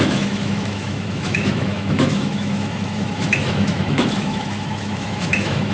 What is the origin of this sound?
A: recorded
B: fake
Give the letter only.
B